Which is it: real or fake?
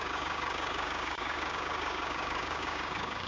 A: fake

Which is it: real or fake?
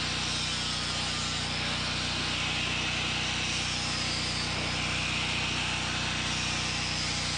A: real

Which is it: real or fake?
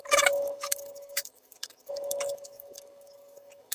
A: fake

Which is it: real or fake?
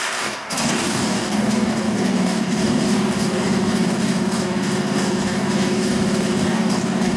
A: fake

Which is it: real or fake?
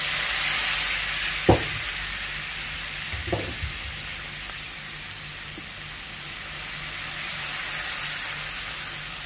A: real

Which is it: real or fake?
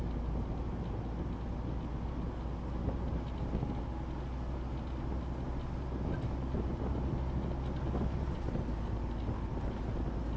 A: real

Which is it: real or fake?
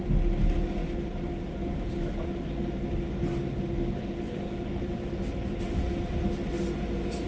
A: real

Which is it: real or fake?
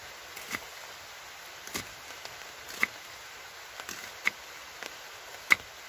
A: real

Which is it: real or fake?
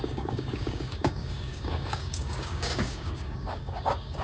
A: fake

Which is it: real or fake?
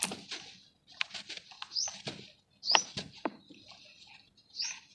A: real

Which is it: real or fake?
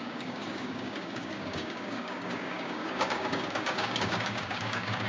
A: fake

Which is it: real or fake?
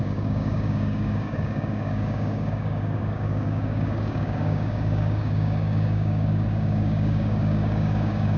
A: fake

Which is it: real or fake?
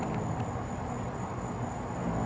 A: real